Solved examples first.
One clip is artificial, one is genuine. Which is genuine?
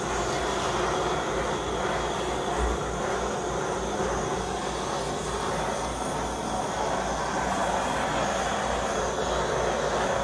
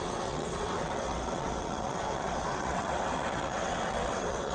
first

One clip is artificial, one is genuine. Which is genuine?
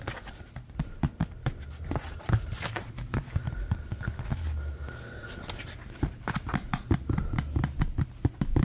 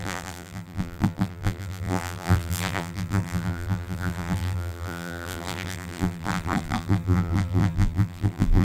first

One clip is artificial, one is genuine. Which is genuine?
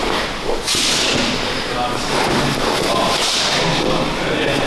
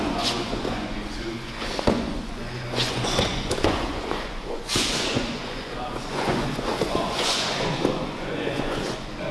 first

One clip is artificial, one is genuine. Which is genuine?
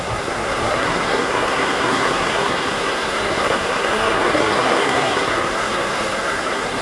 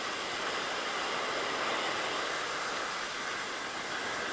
second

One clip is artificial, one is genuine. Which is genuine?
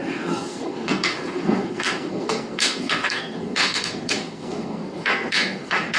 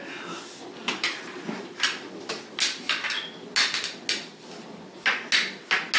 second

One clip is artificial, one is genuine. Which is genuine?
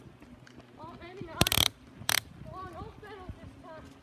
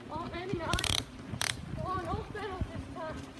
first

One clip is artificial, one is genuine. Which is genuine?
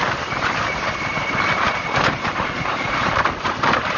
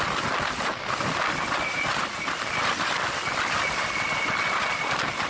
second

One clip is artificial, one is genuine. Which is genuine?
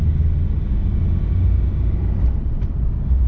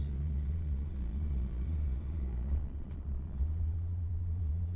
first